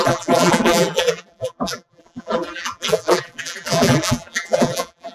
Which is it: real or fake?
fake